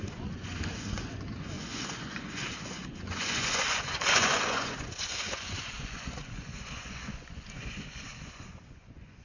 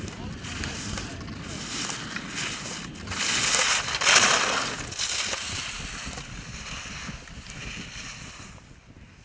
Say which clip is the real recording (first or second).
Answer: second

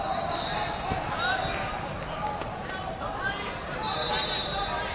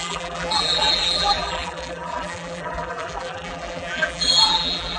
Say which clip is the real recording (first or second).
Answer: first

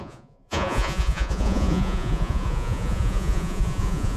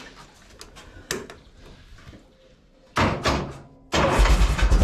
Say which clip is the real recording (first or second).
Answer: second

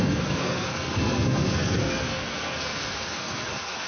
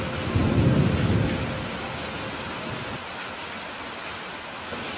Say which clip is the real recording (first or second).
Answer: second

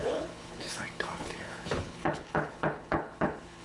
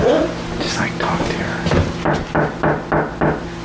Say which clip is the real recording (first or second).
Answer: second